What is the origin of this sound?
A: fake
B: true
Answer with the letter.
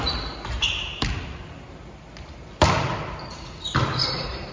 B